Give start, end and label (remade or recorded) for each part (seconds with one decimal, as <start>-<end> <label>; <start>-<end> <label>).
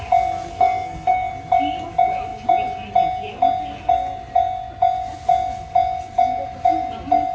0.0-0.5 recorded; 0.5-1.3 remade; 1.3-7.3 recorded